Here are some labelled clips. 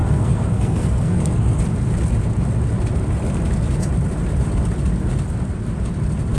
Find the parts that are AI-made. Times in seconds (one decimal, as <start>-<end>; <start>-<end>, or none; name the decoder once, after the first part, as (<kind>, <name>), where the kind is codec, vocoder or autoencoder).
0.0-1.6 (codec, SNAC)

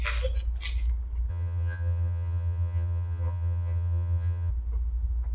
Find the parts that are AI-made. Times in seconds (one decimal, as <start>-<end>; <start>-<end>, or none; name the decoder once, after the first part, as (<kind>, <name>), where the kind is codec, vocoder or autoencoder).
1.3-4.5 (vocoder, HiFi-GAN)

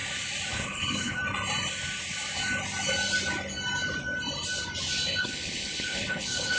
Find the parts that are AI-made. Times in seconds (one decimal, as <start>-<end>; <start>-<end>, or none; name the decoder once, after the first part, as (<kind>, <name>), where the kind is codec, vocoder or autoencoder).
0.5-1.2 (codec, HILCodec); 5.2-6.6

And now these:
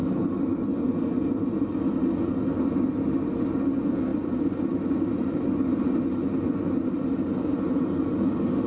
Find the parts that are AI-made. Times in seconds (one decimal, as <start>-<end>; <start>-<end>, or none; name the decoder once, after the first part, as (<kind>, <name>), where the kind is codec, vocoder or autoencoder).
4.1-5.5 (vocoder, BigVGAN v2)

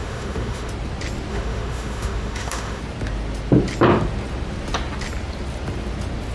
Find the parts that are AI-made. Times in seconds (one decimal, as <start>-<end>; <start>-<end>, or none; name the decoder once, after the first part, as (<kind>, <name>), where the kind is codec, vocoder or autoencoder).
0.0-0.7 (autoencoder, DAC-VAE); 1.3-2.8